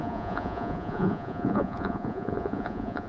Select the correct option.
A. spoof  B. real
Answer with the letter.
A